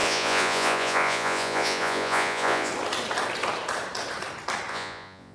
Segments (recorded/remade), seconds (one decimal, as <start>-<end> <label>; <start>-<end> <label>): 0.0-2.7 remade; 2.7-4.7 recorded; 4.7-5.3 remade